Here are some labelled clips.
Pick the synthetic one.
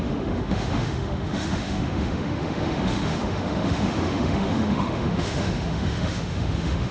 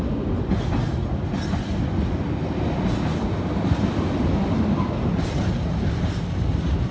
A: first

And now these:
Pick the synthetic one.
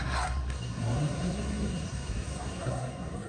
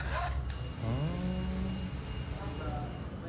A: first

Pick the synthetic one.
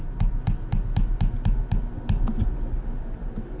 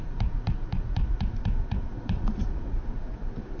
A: second